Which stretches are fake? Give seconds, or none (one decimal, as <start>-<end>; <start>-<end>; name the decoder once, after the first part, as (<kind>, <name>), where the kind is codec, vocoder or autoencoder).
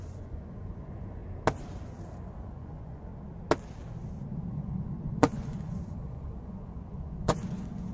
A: 0.0-1.2 (vocoder, Vocos); 2.4-3.1; 4.5-7.9